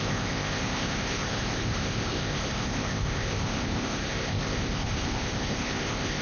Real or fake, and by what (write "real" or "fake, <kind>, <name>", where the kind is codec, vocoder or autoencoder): fake, codec, ZipCodec